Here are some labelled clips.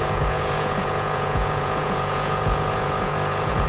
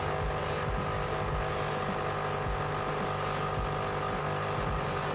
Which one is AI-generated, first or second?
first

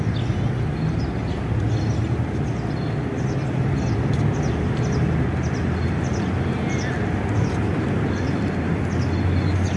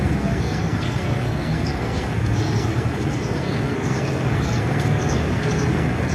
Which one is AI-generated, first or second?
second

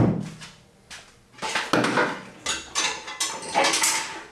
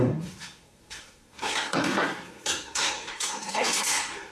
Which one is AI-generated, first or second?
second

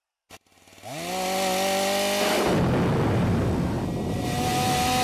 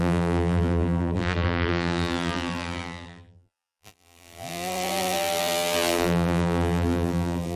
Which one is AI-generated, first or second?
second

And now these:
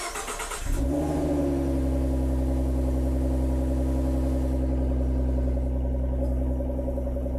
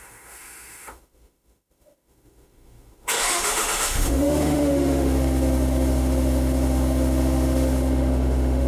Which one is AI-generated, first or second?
second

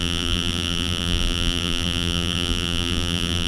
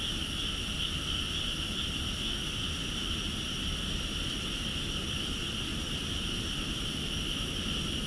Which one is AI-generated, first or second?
first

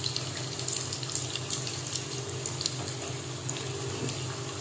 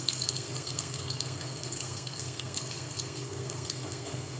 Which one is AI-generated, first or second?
second